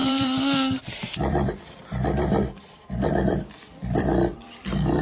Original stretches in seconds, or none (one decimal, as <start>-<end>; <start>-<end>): none